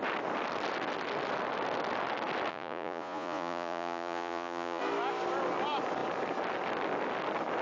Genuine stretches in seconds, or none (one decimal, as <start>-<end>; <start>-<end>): 0.0-2.5; 4.8-7.6